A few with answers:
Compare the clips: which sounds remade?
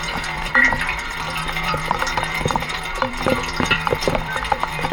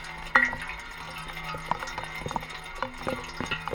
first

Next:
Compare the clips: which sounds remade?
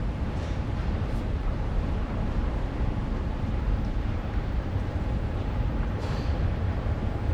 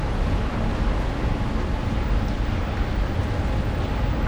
first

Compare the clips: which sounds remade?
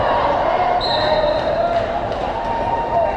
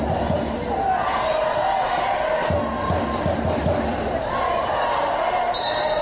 first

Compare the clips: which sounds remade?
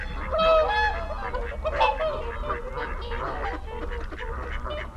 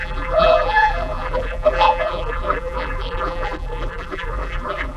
second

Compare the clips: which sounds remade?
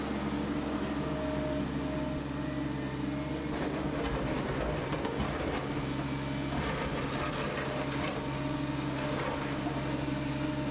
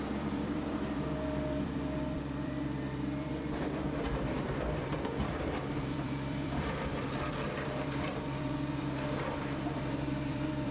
second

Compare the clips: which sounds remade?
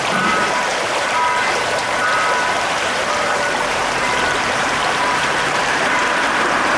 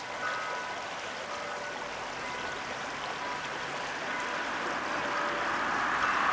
first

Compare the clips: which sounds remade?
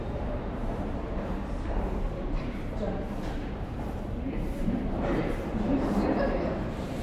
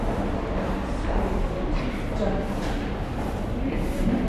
first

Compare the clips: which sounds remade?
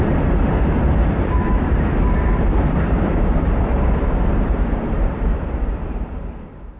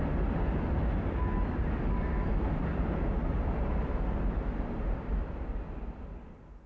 first